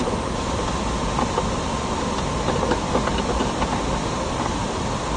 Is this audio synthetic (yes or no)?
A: no